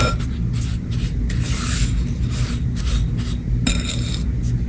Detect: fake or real real